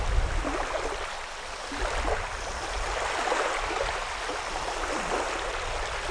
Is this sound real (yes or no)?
yes